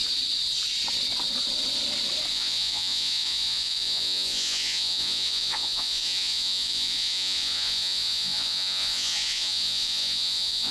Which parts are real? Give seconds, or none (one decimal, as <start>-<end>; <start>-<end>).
0.0-2.3